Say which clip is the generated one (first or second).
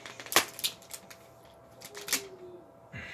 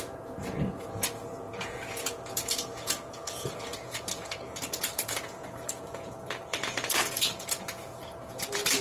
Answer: second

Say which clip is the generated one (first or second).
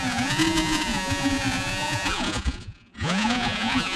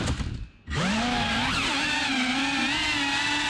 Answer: first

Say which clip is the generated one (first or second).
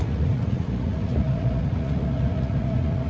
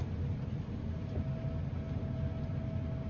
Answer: first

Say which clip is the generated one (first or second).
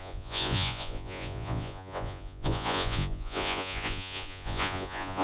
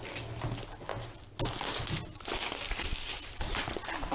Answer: first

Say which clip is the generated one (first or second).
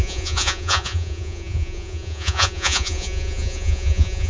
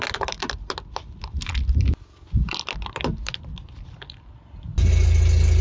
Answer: first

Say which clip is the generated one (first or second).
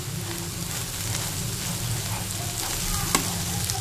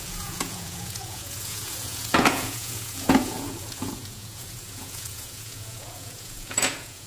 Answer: second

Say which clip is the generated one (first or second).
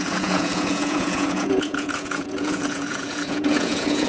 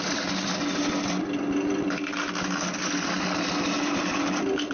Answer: first